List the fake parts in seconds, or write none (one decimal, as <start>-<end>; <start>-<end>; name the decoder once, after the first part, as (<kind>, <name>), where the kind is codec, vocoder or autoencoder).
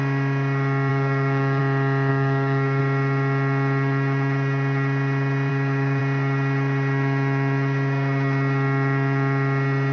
0.9-1.6 (codec, DAC); 2.1-2.8; 5.5-6.0